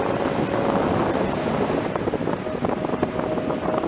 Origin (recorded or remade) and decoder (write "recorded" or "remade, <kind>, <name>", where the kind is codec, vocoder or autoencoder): recorded